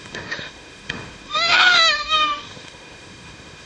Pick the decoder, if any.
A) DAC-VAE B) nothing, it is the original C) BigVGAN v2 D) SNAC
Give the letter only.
A